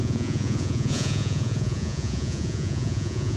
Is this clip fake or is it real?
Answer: fake